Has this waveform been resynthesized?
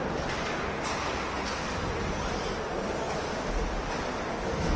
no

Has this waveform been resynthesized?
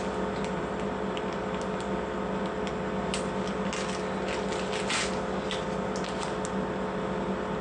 no